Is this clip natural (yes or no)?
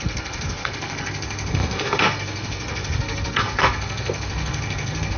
no